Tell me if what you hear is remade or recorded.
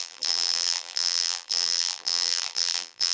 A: remade